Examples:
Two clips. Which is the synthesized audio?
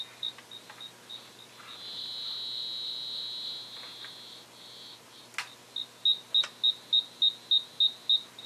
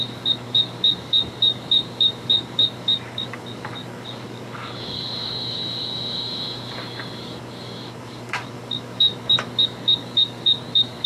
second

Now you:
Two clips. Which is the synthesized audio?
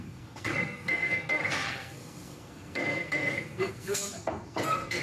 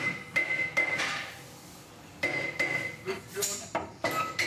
first